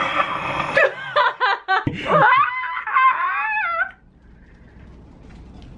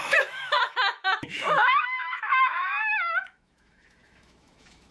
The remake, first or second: second